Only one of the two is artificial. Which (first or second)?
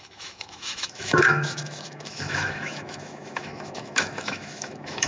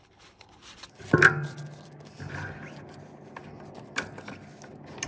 first